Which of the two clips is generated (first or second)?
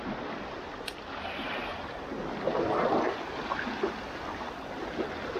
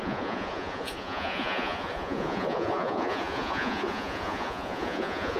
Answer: second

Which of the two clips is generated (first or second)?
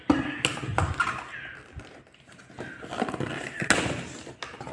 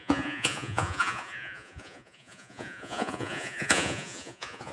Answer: second